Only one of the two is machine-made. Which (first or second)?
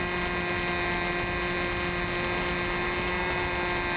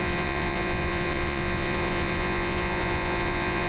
second